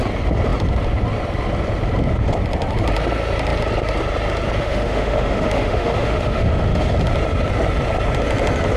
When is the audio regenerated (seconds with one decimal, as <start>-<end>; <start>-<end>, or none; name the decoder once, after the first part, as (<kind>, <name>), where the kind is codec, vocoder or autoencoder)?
4.6-6.9 (autoencoder, DAC-VAE)